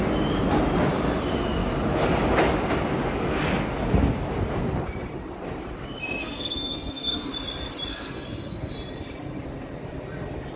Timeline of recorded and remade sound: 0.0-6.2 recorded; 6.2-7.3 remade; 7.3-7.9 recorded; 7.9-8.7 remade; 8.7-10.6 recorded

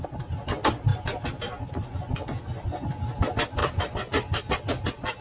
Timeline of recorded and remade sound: 0.0-5.2 recorded